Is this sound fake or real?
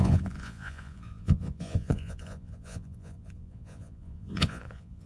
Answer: fake